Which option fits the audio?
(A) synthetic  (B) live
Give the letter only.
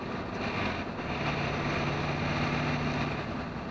B